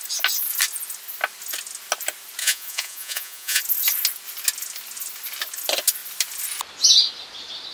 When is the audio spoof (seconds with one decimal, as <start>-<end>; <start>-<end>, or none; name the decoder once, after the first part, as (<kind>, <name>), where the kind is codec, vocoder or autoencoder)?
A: 2.4-3.6 (vocoder, Vocos)